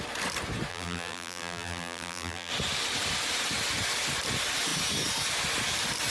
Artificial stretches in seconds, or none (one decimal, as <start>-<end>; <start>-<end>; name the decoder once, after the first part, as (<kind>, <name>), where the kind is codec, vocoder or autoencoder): 0.7-2.5 (vocoder, BigVGAN v2)